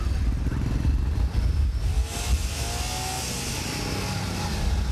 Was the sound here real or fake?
real